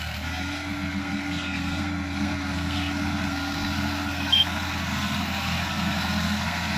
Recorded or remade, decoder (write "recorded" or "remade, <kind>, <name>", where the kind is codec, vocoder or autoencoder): remade, codec, SNAC